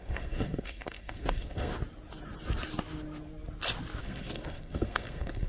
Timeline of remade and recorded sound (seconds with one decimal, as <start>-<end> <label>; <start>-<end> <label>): 0.0-1.7 remade; 1.7-4.0 recorded; 4.0-5.5 remade